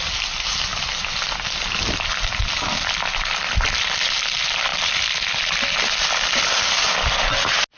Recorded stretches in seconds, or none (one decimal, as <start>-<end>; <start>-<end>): 0.0-7.8